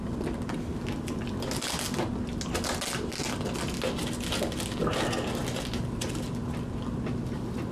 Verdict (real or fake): real